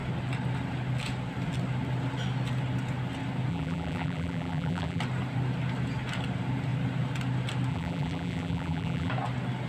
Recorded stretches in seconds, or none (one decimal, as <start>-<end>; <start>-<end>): 0.0-3.5; 5.0-7.7; 9.1-9.7